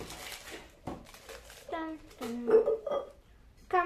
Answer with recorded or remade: recorded